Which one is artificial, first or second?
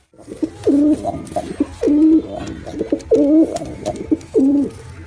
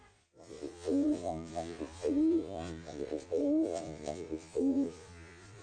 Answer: second